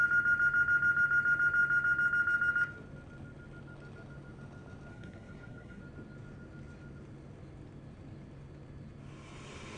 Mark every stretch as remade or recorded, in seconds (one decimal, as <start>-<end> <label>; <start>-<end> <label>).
0.0-4.9 recorded; 4.9-5.8 remade; 5.8-9.8 recorded